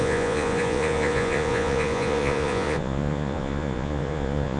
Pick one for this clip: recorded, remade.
remade